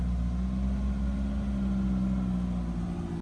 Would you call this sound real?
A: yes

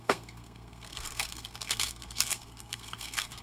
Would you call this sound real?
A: no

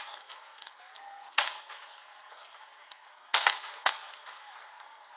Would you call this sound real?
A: no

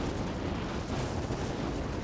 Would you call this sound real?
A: yes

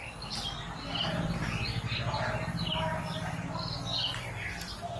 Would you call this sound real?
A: yes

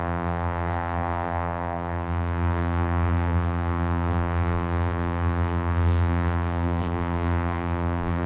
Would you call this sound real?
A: no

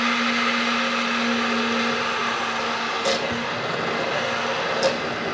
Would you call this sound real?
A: yes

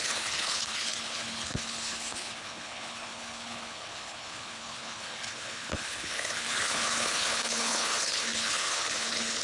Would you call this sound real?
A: no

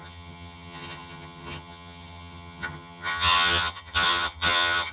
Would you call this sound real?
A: no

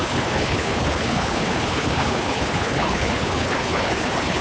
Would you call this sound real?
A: no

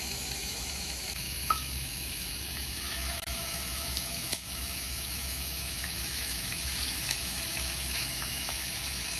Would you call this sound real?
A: no